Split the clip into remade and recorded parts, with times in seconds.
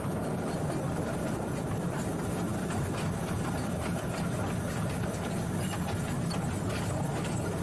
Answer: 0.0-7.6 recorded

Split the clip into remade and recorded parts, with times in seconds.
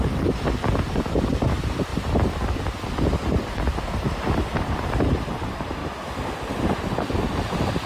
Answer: 0.0-1.9 remade; 1.9-4.6 recorded; 4.6-5.8 remade; 5.8-6.8 recorded; 6.8-7.9 remade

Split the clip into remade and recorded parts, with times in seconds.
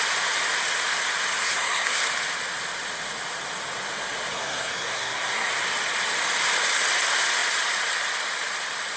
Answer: 0.0-1.4 recorded; 1.4-2.0 remade; 2.0-4.3 recorded; 4.3-5.5 remade; 5.5-9.0 recorded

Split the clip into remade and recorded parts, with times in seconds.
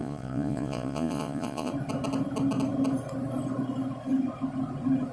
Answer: 0.0-1.7 remade; 1.7-5.1 recorded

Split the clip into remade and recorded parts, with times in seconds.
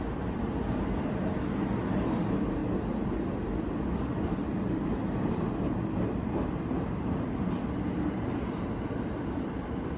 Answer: 0.0-10.0 recorded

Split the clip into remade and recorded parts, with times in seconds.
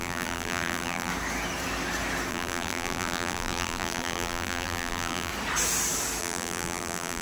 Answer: 0.0-1.1 remade; 1.1-2.3 recorded; 2.3-5.3 remade; 5.3-6.2 recorded; 6.2-7.2 remade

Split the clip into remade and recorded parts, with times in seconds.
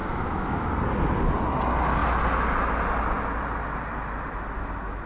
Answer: 0.0-0.7 remade; 0.7-5.1 recorded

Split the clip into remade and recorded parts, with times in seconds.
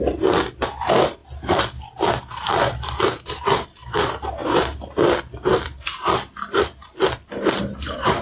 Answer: 0.0-1.2 remade; 1.2-3.4 recorded; 3.4-4.4 remade; 4.4-5.1 recorded; 5.1-8.2 remade